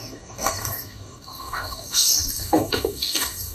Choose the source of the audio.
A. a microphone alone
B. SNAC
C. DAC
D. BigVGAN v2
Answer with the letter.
C